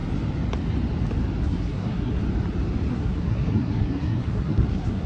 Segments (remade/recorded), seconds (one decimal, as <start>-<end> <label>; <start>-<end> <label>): 0.0-1.4 recorded; 1.4-2.2 remade; 2.2-2.9 recorded; 2.9-5.1 remade